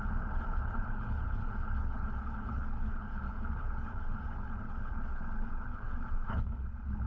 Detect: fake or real fake